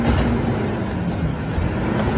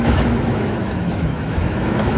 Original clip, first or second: first